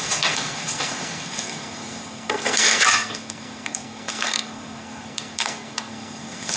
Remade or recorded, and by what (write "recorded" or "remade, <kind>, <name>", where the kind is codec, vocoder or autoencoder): remade, codec, SNAC